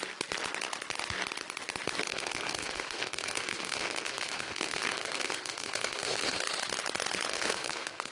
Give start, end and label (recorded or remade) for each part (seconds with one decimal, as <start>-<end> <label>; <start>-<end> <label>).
0.0-2.1 recorded; 2.1-6.4 remade; 6.4-7.3 recorded; 7.3-8.1 remade